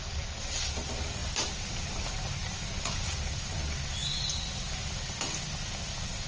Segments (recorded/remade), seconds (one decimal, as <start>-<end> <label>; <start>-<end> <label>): 0.0-1.2 recorded; 1.2-1.9 remade; 1.9-6.3 recorded